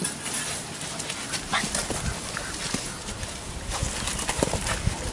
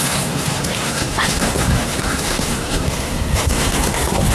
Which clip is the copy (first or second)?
second